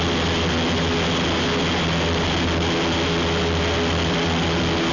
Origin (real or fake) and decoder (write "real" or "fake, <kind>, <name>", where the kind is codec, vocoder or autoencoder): real